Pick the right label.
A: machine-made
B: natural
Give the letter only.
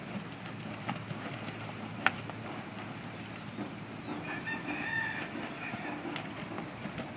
B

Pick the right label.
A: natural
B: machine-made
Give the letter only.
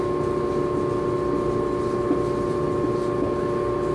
A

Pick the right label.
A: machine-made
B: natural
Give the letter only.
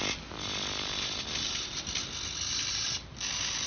B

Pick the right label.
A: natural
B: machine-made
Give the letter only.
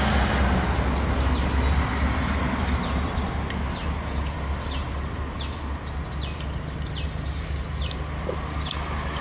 A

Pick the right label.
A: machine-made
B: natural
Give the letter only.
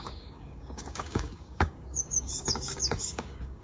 A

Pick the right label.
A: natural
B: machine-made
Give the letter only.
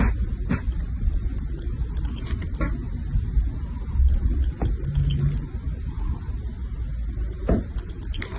A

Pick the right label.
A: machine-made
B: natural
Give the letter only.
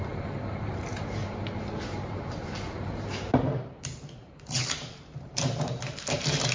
A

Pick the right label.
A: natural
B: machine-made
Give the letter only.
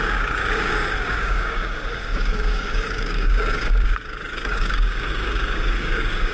B